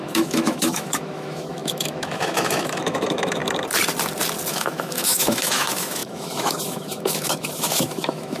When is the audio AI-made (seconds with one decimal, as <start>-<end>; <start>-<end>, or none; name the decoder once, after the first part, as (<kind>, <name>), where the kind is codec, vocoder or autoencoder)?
0.0-3.4 (autoencoder, DAC-VAE); 4.5-8.4